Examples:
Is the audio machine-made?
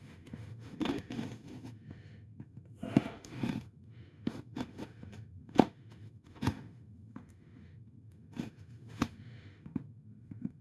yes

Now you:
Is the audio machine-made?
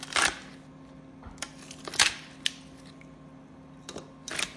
no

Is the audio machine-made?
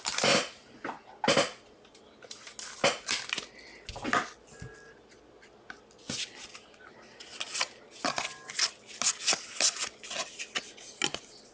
no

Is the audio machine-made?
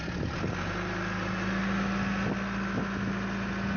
no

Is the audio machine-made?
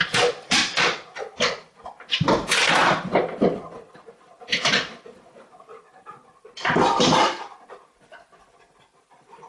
yes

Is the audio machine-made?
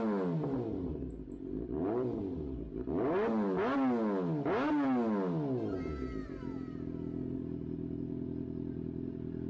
no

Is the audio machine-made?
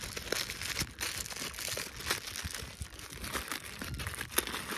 no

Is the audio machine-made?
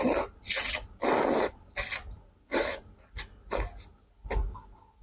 no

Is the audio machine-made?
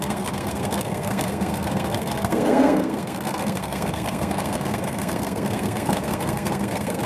yes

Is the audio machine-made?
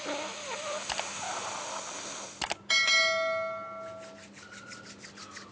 no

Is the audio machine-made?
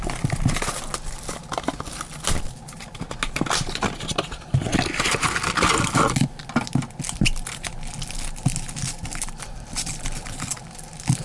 no